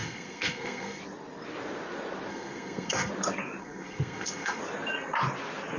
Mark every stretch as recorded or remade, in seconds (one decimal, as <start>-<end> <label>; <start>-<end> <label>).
0.0-1.0 remade; 1.0-2.3 recorded; 2.3-3.1 remade; 3.1-3.6 recorded; 3.6-4.6 remade; 4.6-5.8 recorded